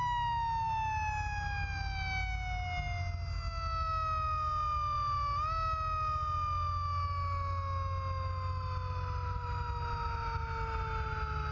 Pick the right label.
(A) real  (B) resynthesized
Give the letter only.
A